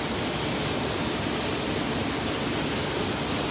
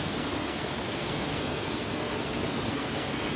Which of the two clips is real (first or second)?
first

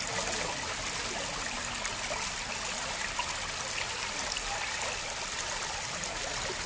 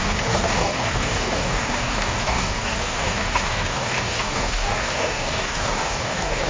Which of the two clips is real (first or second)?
first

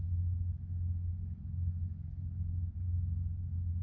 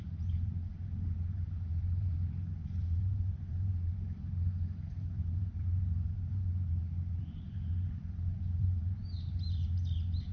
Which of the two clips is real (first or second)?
first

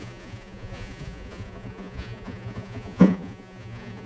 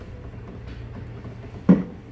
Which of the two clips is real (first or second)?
second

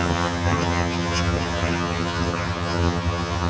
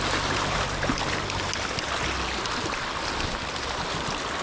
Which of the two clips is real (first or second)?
second